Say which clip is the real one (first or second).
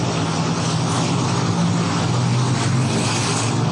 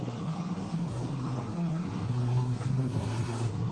first